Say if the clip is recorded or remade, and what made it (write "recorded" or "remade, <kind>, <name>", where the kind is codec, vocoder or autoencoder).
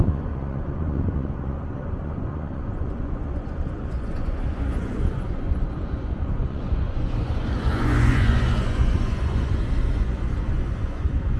remade, vocoder, Vocos